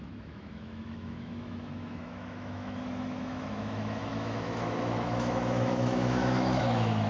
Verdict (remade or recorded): remade